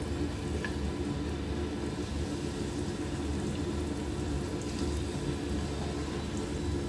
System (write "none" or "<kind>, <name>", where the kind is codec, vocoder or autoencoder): none